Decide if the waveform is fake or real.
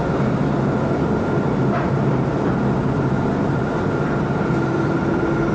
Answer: real